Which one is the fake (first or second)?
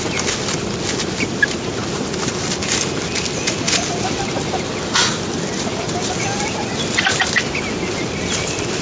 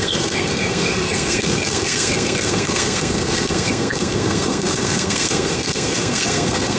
second